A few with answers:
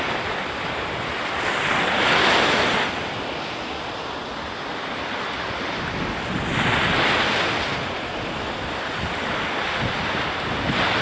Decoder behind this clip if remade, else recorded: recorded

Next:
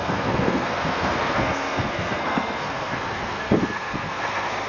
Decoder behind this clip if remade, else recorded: remade, codec, SNAC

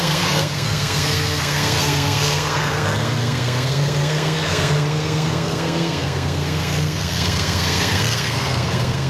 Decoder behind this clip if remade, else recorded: remade, codec, SNAC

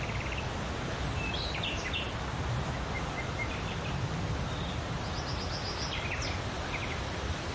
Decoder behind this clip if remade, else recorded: recorded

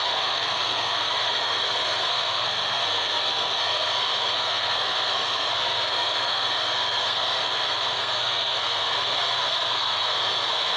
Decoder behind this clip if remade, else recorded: remade, codec, SNAC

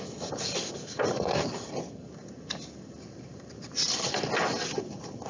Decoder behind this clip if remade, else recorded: recorded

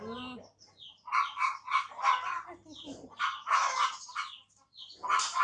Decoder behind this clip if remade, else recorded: recorded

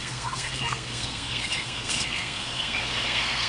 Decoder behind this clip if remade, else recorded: remade, codec, SNAC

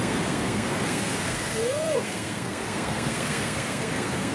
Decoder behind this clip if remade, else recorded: remade, codec, SNAC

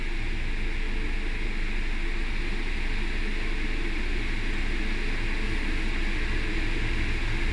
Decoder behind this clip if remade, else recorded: recorded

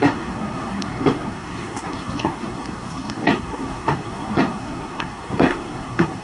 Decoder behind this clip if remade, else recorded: remade, codec, SNAC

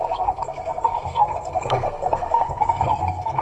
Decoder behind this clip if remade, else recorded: remade, codec, SNAC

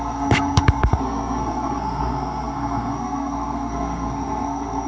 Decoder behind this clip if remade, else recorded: remade, codec, SNAC